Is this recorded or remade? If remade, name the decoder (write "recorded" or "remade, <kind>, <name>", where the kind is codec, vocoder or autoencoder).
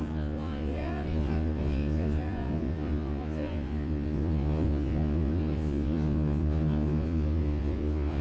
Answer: remade, vocoder, Vocos